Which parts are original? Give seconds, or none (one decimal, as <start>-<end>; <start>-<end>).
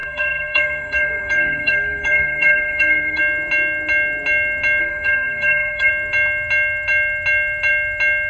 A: 3.2-4.8; 5.9-8.3